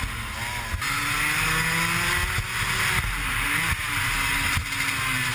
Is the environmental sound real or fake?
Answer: real